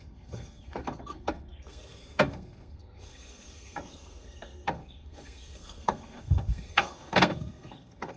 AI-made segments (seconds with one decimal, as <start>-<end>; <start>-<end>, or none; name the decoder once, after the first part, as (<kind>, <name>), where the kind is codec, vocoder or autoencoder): 0.0-8.2 (codec, SNAC)